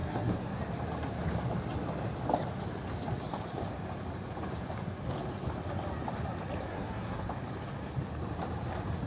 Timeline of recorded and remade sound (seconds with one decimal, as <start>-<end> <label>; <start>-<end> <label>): 0.0-0.6 remade; 0.6-6.7 recorded; 6.7-7.3 remade; 7.3-9.1 recorded